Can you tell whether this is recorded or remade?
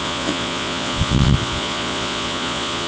remade